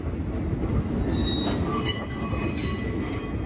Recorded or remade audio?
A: recorded